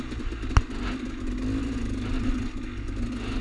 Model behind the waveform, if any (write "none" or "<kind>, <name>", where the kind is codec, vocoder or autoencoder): none